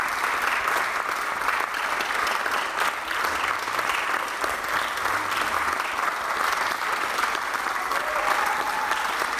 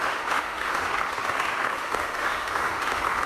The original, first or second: first